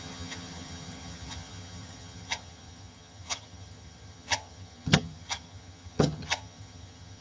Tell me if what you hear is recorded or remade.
remade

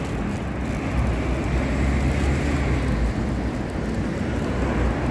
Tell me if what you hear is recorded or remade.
recorded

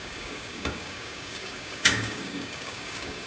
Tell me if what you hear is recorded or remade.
remade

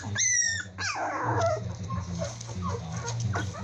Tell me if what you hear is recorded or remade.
recorded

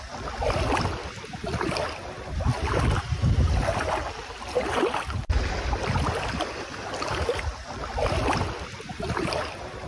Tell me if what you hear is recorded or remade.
recorded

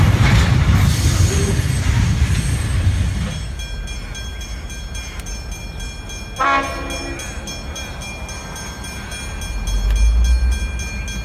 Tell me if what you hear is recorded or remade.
recorded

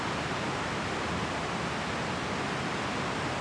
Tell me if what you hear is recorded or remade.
recorded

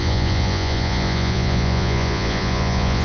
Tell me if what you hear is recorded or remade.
remade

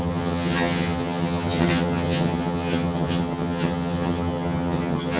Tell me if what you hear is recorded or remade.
remade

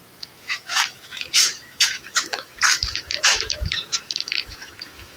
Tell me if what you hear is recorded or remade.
remade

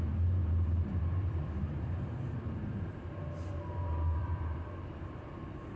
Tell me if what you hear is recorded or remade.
remade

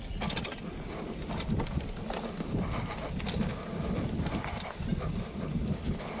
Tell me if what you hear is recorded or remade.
recorded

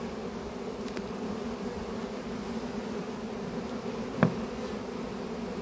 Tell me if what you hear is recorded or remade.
recorded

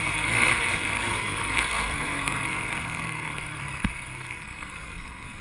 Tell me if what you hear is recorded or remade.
remade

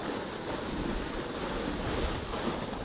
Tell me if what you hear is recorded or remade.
recorded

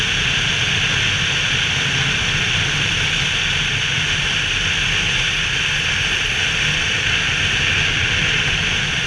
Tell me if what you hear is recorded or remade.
recorded